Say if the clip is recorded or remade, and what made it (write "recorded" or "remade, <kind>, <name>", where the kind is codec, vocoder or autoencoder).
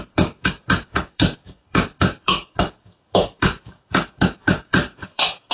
remade, codec, DAC